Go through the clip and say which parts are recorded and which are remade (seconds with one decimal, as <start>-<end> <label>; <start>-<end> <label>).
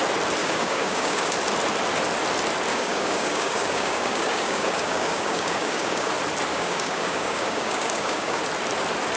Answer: 0.0-0.4 recorded; 0.4-1.3 remade; 1.3-2.7 recorded; 2.7-6.1 remade; 6.1-6.5 recorded; 6.5-8.4 remade; 8.4-9.2 recorded